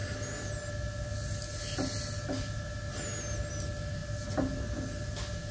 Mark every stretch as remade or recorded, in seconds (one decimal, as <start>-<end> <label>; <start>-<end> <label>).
0.0-5.5 recorded